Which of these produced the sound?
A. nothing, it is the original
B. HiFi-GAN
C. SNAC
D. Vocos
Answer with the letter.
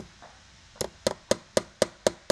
A